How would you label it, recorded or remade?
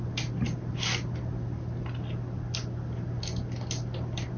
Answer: recorded